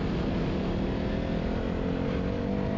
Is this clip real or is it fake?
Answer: real